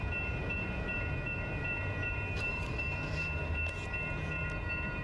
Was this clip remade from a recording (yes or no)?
yes